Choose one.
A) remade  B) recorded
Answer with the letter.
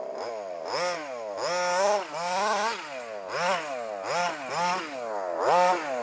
B